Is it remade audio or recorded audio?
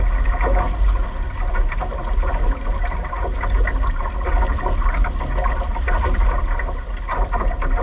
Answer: recorded